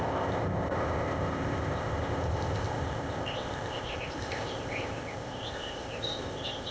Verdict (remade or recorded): remade